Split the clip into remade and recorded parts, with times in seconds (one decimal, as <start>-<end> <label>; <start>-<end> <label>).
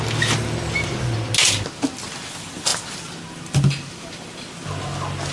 0.0-5.3 recorded